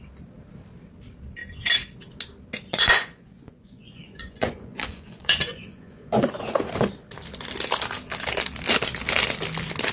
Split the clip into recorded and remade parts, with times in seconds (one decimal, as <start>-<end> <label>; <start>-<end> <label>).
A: 0.0-2.7 recorded; 2.7-6.4 remade; 6.4-9.9 recorded